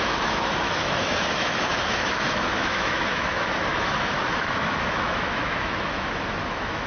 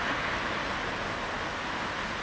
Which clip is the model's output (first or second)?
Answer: first